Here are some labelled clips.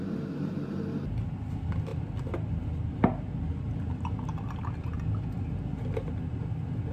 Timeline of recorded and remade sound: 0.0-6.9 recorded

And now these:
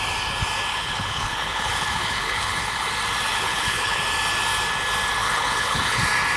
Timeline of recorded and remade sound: 0.0-0.7 recorded; 0.7-2.9 remade; 2.9-3.3 recorded; 3.3-4.0 remade; 4.0-5.2 recorded; 5.2-6.0 remade; 6.0-6.4 recorded

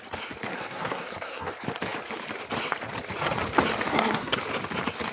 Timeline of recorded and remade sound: 0.0-0.5 recorded; 0.5-1.5 remade; 1.5-3.9 recorded; 3.9-4.4 remade; 4.4-5.1 recorded

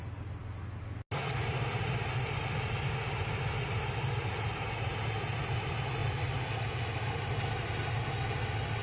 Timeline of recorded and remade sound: 0.0-8.8 recorded

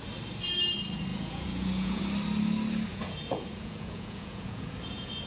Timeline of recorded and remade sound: 0.0-1.1 recorded; 1.1-2.0 remade; 2.0-2.9 recorded; 2.9-5.3 remade

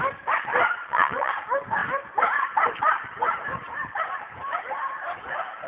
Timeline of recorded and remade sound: 0.0-0.8 recorded; 0.8-1.3 remade; 1.3-5.7 recorded

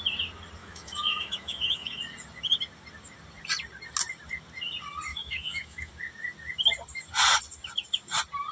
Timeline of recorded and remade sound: 0.0-0.6 recorded; 0.6-2.0 remade; 2.0-5.1 recorded; 5.1-5.9 remade; 5.9-8.5 recorded

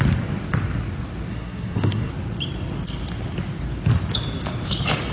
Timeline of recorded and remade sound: 0.0-1.3 recorded; 1.3-2.1 remade; 2.1-5.1 recorded